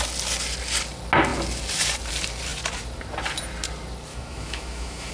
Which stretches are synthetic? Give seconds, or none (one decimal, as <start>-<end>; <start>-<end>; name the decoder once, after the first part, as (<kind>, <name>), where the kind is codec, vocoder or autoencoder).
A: 4.1-5.1 (autoencoder, DAC-VAE)